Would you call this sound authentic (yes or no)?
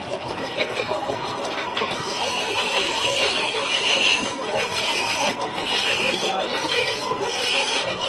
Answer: no